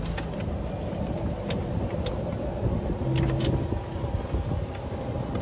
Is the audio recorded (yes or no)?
yes